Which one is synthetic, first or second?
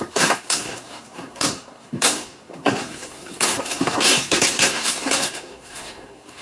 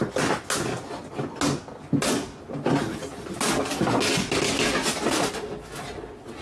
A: first